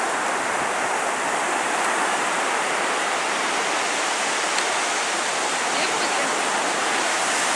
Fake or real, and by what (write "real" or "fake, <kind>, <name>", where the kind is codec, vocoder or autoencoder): fake, vocoder, BigVGAN v2